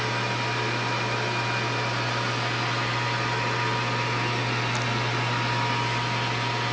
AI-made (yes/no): no